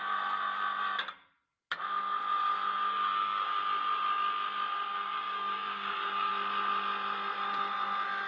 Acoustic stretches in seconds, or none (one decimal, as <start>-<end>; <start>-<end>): 0.0-2.9; 3.5-4.9; 6.3-8.3